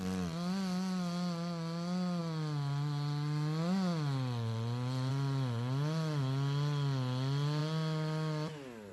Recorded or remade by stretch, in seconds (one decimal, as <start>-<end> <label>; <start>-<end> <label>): 0.0-8.9 recorded